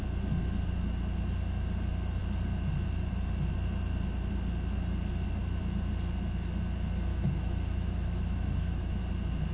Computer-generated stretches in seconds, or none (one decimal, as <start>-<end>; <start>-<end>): 7.1-9.0